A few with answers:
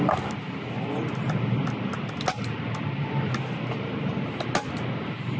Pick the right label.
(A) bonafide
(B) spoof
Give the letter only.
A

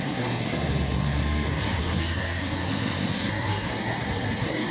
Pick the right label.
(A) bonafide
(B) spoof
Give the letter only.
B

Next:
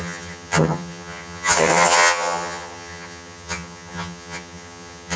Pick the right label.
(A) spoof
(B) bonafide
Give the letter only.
A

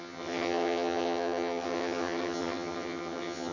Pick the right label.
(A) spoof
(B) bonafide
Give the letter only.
A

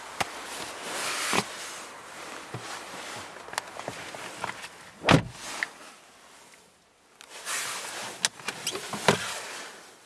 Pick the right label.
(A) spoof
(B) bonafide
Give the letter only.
B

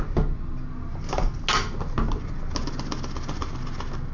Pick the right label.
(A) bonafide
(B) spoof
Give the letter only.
A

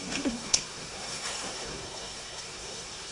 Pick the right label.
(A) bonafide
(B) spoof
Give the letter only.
B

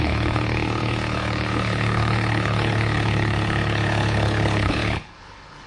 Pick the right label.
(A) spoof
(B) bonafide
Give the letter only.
A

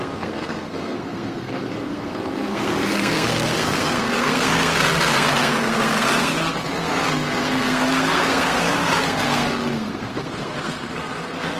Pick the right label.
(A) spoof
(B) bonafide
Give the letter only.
A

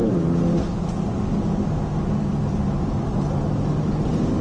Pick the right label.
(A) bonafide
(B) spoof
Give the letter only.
A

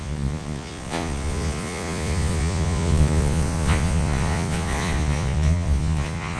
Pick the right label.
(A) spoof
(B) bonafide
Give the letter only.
A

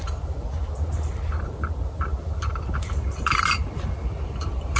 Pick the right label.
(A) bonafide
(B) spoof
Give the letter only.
A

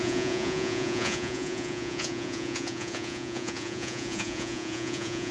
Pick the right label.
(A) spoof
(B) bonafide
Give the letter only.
A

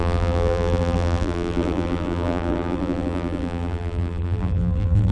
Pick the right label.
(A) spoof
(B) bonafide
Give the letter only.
A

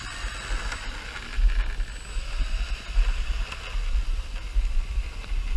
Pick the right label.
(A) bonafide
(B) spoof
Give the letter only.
A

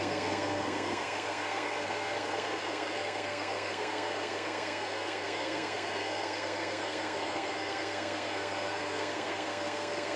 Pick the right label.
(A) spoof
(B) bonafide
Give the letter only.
A